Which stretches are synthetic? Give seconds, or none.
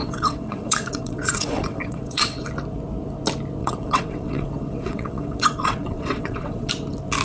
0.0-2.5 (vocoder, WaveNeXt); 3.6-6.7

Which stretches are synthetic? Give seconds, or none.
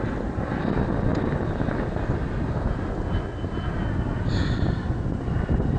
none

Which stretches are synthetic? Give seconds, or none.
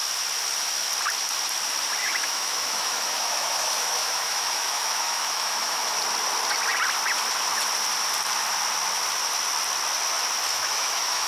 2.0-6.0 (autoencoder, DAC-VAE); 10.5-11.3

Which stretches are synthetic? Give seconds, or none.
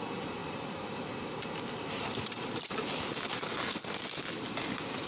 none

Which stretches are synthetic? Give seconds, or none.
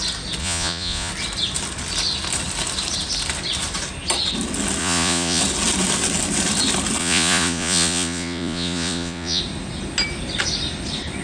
0.4-1.1 (vocoder, Vocos); 4.8-5.4; 7.0-9.4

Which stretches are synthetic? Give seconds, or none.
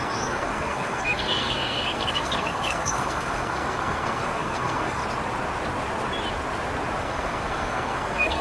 0.0-5.0 (codec, SNAC); 7.0-8.4